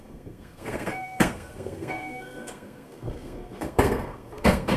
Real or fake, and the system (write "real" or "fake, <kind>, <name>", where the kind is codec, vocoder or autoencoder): fake, codec, SNAC